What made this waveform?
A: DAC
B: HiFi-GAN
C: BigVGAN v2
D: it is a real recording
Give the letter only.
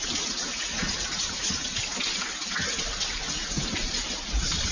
D